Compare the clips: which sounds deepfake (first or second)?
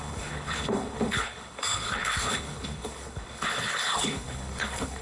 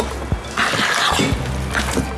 first